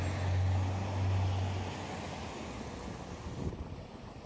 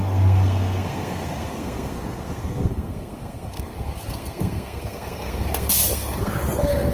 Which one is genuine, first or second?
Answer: first